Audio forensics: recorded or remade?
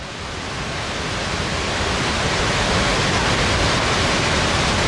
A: recorded